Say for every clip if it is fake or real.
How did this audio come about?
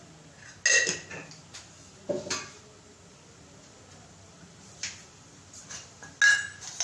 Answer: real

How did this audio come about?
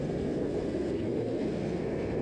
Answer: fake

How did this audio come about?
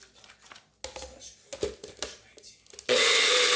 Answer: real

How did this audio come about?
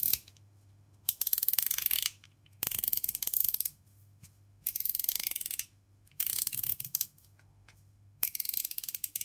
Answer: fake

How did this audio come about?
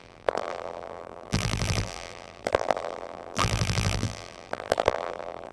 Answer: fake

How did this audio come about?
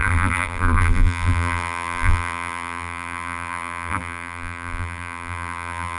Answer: fake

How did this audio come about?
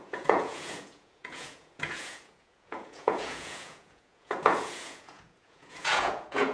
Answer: fake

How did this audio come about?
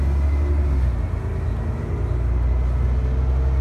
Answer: real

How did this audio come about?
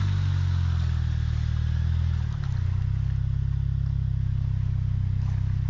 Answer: real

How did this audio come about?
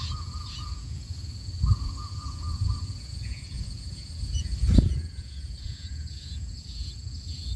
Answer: fake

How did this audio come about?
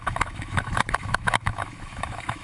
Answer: fake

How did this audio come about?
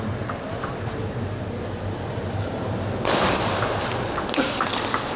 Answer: real